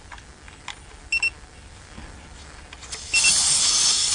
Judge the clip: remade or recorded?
recorded